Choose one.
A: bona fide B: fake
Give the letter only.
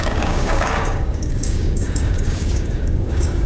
B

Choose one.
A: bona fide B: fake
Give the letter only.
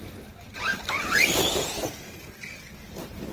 A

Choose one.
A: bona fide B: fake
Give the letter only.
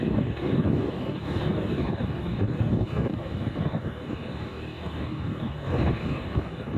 B